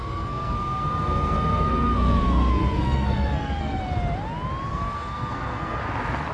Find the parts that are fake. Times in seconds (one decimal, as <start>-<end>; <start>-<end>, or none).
0.0-3.8; 4.7-5.8